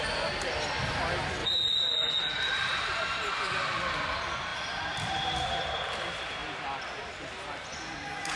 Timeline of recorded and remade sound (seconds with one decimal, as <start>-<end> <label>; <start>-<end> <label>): 0.0-1.4 recorded; 1.4-2.2 remade; 2.2-8.4 recorded